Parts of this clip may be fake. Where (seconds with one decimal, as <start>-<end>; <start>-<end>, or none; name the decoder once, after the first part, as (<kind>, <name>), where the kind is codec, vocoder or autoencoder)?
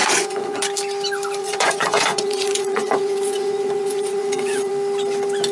0.0-0.6 (vocoder, Vocos); 1.4-4.7